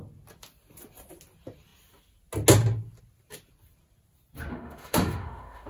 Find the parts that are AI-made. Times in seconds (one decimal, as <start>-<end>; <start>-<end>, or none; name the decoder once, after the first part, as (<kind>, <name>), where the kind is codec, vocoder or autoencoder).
4.5-5.7 (autoencoder, DAC-VAE)